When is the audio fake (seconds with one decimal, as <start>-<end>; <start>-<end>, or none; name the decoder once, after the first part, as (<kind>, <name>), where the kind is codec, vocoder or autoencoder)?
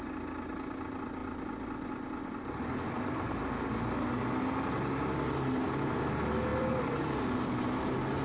1.2-3.9 (vocoder, BigVGAN v2); 6.5-7.5